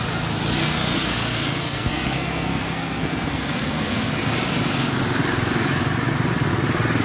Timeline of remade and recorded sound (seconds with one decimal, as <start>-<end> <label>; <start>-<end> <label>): 0.0-0.6 recorded; 0.6-4.3 remade; 4.3-7.0 recorded